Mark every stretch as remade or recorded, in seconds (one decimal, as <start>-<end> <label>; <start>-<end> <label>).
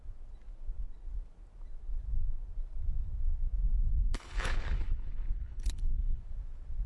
0.0-3.9 recorded; 3.9-6.2 remade; 6.2-6.9 recorded